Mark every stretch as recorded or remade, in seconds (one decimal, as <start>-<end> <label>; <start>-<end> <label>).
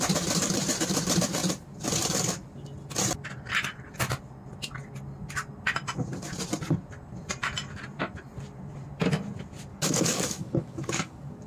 0.0-9.7 recorded; 9.7-11.5 remade